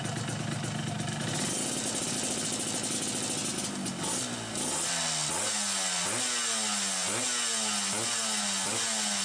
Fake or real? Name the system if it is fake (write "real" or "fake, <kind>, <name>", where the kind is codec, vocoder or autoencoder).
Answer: real